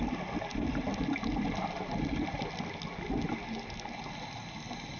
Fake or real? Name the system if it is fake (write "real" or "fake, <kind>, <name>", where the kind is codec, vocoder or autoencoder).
real